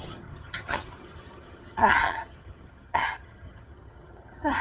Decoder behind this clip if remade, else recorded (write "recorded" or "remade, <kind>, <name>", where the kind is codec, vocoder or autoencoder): remade, vocoder, HiFi-GAN